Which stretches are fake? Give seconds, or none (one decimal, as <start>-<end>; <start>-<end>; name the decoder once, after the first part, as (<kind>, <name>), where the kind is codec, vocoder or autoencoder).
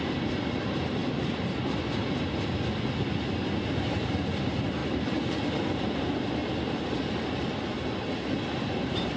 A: 0.0-1.0 (vocoder, BigVGAN v2); 3.7-4.8; 5.9-6.4; 8.7-9.2